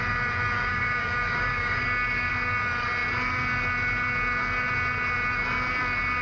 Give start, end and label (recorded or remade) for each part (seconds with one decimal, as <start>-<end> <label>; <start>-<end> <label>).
0.0-0.7 recorded; 0.7-2.3 remade; 2.3-6.2 recorded